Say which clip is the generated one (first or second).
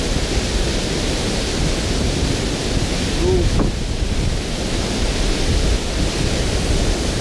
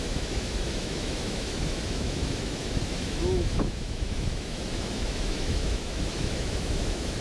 second